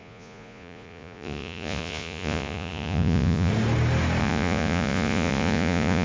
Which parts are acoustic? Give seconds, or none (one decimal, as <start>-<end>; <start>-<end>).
3.5-4.2